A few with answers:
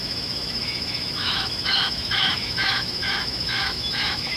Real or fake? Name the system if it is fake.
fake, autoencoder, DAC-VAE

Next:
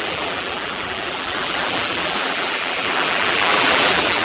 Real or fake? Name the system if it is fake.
fake, vocoder, BigVGAN v2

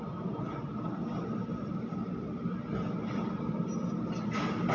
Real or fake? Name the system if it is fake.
real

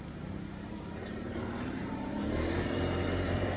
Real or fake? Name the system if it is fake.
fake, vocoder, BigVGAN v2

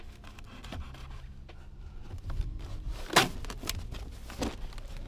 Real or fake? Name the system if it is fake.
real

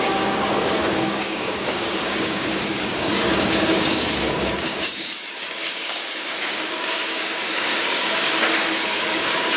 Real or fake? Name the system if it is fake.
fake, codec, DAC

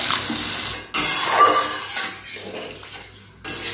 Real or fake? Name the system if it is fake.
real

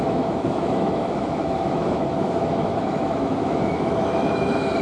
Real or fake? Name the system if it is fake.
fake, autoencoder, DAC-VAE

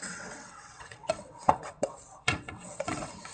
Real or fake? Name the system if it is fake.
fake, vocoder, WaveNeXt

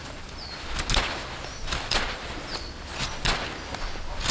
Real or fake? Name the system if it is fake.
real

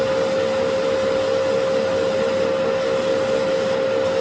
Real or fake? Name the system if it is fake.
real